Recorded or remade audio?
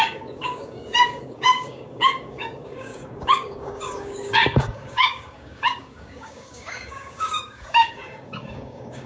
remade